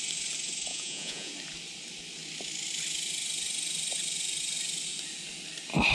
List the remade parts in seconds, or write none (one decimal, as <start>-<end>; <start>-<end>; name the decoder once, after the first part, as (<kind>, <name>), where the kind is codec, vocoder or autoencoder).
0.7-1.3 (vocoder, Vocos)